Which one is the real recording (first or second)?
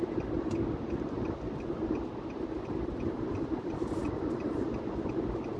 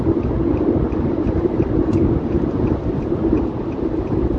first